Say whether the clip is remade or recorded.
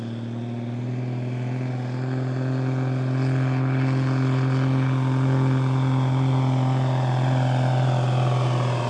recorded